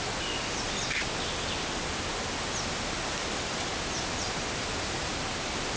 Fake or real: real